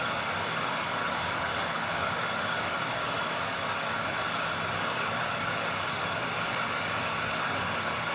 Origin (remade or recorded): remade